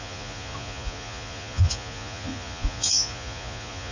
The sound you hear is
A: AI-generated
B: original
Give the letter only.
A